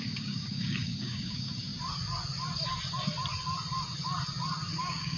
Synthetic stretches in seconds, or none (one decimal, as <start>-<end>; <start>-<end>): 0.0-1.7; 4.8-5.2